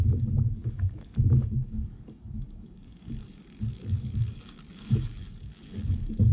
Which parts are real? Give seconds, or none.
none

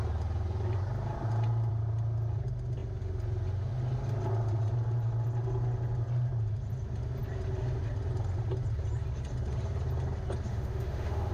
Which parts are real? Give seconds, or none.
0.0-10.5